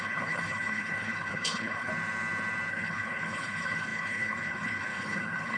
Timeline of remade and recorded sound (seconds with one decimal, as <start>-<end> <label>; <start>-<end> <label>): 0.0-1.9 remade; 1.9-2.7 recorded; 2.7-5.6 remade